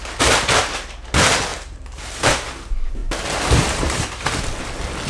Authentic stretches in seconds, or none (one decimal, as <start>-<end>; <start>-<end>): 0.0-1.5; 2.3-3.0; 4.4-5.1